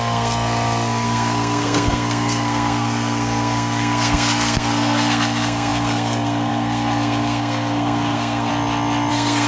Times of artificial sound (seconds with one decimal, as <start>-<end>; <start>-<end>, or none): 0.0-8.5; 9.1-9.5